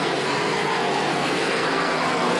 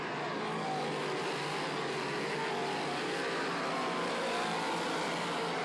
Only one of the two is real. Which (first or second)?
second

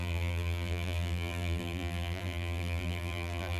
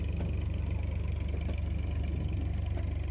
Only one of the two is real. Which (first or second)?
second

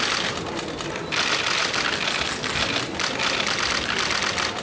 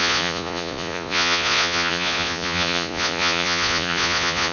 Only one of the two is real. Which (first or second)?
first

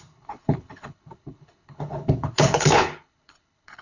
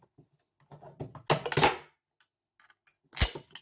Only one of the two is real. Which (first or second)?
second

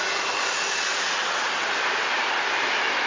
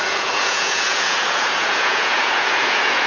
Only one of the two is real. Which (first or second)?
first